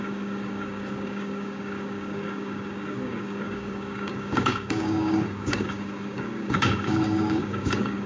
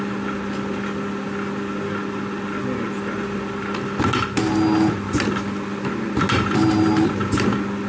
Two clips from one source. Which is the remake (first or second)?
first